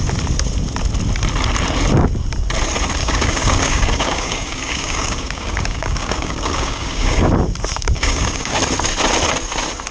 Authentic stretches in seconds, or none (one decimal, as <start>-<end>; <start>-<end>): 0.0-3.0; 7.3-7.7; 8.6-9.9